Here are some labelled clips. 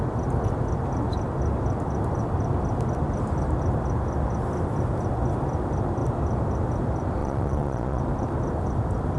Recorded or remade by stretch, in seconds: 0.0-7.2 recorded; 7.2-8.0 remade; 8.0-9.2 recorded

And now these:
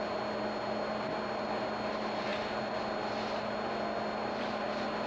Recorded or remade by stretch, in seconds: 0.0-5.1 recorded

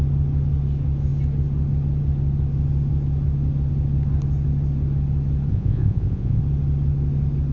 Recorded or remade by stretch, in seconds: 0.0-5.5 recorded; 5.5-6.4 remade; 6.4-7.5 recorded

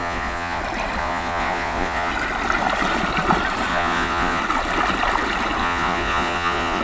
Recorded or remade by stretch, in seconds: 0.0-0.6 remade; 0.6-1.0 recorded; 1.0-2.1 remade; 2.1-3.7 recorded; 3.7-4.4 remade; 4.4-5.6 recorded; 5.6-6.8 remade

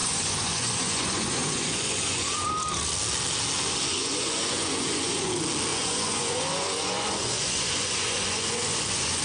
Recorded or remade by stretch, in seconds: 0.0-2.5 remade; 2.5-4.0 recorded; 4.0-5.3 remade; 5.3-5.7 recorded; 5.7-9.2 remade

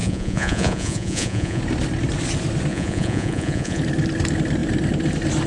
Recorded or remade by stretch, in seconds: 0.0-1.6 remade; 1.6-2.7 recorded; 2.7-3.8 remade; 3.8-5.5 recorded

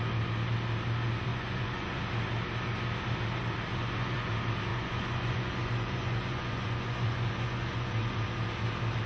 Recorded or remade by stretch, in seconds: 0.0-1.3 recorded; 1.3-2.0 remade; 2.0-3.7 recorded; 3.7-4.3 remade; 4.3-4.7 recorded; 4.7-8.3 remade; 8.3-9.1 recorded

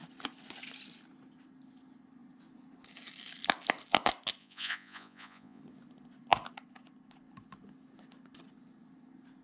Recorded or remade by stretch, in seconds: 0.0-4.4 recorded; 4.4-5.6 remade; 5.6-9.4 recorded